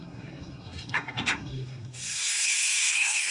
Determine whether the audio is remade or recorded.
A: remade